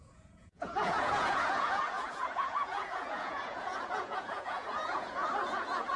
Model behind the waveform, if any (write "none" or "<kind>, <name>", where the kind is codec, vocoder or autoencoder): vocoder, Vocos